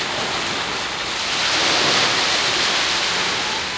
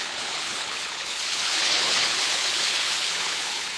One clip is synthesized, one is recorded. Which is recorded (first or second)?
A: first